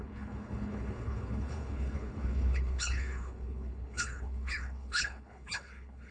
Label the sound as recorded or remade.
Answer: remade